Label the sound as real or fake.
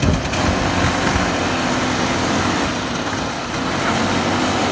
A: real